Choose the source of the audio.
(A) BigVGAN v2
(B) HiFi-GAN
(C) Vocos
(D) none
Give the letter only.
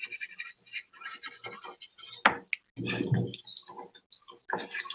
D